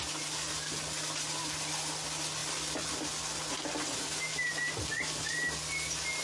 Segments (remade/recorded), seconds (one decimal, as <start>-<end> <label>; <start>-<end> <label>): 0.0-6.2 recorded